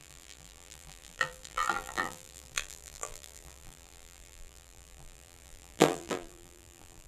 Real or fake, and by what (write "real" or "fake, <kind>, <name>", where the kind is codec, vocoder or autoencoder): fake, vocoder, BigVGAN v2